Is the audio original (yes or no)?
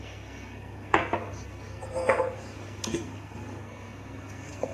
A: no